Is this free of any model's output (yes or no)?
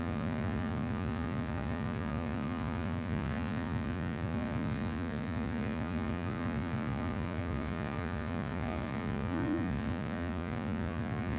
no